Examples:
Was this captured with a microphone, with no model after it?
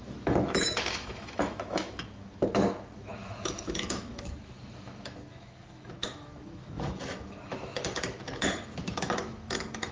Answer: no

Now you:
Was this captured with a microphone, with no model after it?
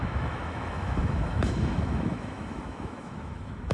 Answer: no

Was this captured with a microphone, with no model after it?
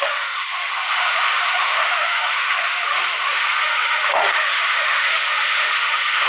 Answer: no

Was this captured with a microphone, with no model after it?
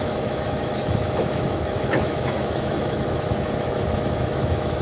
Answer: no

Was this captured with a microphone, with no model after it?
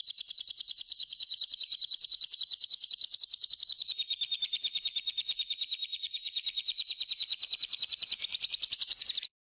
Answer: yes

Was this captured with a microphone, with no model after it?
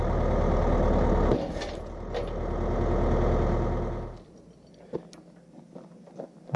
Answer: yes